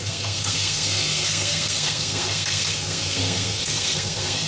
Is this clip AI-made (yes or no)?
yes